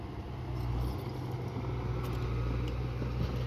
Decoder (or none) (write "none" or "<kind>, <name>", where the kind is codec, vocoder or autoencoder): none